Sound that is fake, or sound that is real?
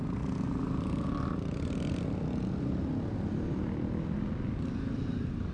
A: real